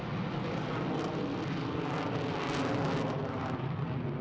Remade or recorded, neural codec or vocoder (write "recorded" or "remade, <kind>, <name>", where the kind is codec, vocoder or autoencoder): recorded